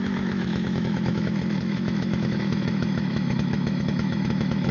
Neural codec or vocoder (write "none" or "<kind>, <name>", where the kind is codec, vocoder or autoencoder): autoencoder, DAC-VAE